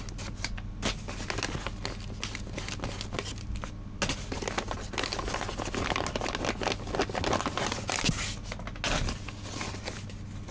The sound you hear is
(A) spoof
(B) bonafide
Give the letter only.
B